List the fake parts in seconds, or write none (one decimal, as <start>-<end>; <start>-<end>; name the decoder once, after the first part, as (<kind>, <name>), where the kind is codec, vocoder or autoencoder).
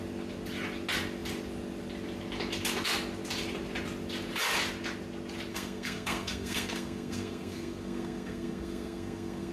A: 5.5-9.5 (codec, SNAC)